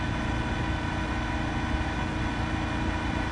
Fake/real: real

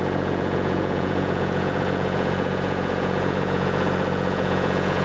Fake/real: fake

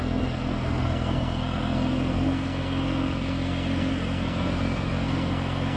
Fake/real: fake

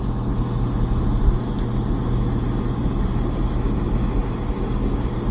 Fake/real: real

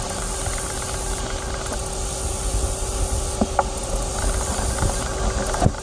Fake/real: real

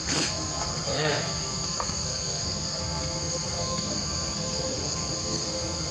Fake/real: fake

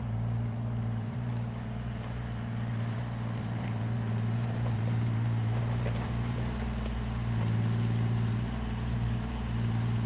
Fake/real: fake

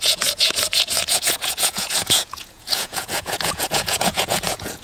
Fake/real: fake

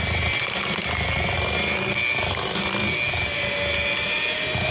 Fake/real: real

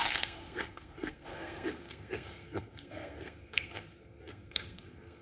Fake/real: fake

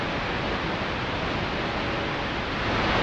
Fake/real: real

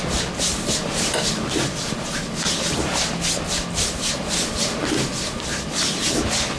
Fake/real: real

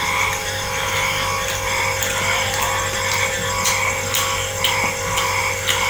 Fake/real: real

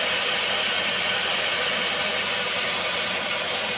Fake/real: real